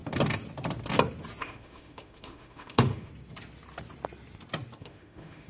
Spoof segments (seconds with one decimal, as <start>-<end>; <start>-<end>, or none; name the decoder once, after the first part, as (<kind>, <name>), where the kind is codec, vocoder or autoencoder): 1.4-3.1 (autoencoder, DAC-VAE); 4.8-5.5

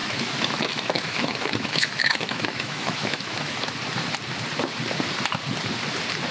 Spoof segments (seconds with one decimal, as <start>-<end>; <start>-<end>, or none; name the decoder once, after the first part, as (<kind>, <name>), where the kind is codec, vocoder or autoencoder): 0.0-3.6 (autoencoder, DAC-VAE)

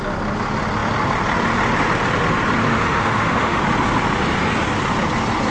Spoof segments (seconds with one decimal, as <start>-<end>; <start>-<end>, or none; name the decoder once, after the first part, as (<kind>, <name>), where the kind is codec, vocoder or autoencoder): 2.7-3.6 (autoencoder, DAC-VAE)